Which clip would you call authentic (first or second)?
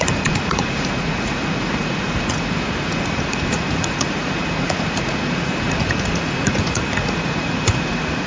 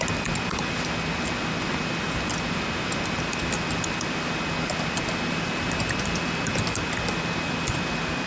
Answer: second